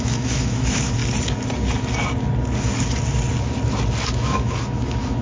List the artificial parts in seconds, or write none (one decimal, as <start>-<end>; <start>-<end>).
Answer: 0.0-1.0; 4.1-5.2